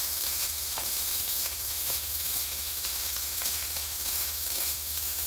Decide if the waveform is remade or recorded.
remade